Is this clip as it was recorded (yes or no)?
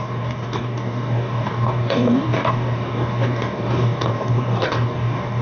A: no